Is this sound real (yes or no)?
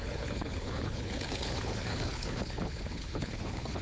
no